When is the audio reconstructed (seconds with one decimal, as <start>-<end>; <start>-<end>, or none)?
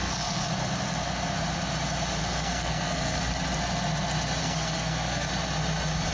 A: 0.0-0.5; 2.2-3.2; 4.4-5.3